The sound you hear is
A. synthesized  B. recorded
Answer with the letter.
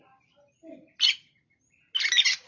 B